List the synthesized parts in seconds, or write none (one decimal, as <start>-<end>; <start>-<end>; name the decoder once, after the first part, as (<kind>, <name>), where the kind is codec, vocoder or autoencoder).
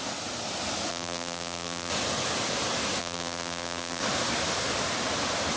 0.9-1.9 (vocoder, BigVGAN v2); 3.0-4.0